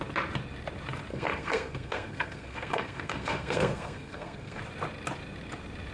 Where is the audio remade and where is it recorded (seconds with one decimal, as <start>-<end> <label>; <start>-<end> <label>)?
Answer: 0.0-1.1 recorded; 1.1-4.6 remade; 4.6-5.9 recorded